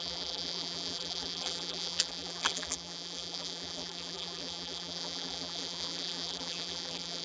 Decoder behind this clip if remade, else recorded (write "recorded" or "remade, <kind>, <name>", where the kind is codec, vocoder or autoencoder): remade, vocoder, BigVGAN v2